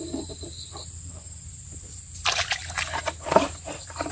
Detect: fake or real real